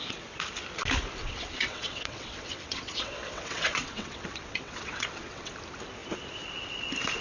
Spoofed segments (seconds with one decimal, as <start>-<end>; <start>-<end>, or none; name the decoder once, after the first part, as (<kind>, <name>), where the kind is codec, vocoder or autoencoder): 1.2-5.5 (vocoder, WaveNeXt)